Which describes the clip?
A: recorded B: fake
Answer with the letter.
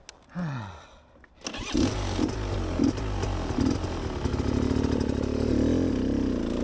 A